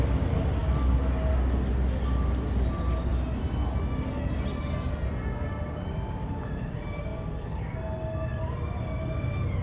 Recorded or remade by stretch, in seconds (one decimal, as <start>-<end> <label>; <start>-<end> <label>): 0.0-9.6 recorded